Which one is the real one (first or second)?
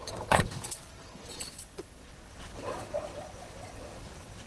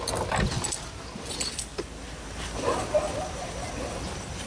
second